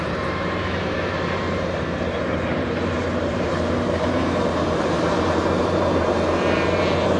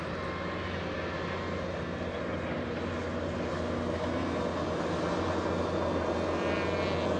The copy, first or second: first